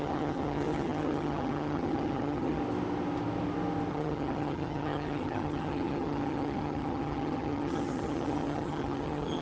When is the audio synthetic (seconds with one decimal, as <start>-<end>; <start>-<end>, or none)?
0.0-2.6; 3.9-9.4